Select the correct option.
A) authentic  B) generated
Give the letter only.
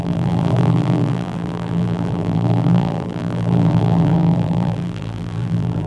B